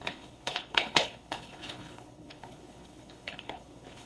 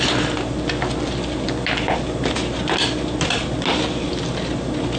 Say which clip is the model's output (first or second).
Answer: first